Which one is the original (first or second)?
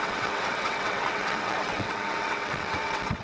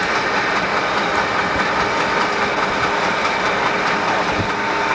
second